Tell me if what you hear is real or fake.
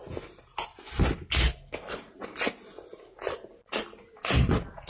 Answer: real